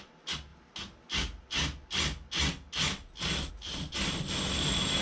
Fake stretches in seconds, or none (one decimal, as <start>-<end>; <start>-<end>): none